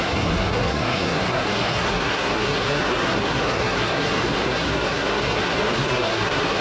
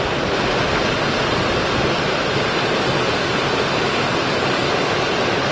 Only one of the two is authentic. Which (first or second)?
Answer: second